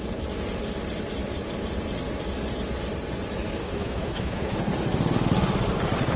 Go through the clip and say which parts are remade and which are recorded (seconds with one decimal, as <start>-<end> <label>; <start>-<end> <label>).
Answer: 0.0-3.6 recorded; 3.6-4.6 remade; 4.6-6.2 recorded